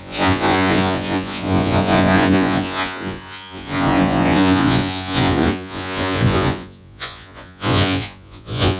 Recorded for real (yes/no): no